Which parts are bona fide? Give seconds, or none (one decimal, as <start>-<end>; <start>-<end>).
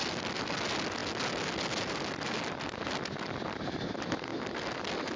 0.0-5.2